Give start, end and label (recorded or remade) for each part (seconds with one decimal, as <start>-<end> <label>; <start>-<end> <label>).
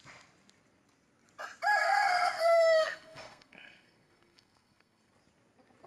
0.0-1.8 recorded; 1.8-5.1 remade; 5.1-5.9 recorded